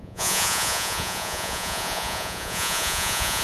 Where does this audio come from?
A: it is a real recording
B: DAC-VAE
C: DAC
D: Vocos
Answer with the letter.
D